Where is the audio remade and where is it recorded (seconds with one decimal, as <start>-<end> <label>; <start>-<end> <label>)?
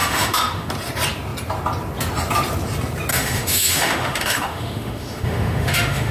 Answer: 0.0-0.7 remade; 0.7-3.1 recorded; 3.1-6.1 remade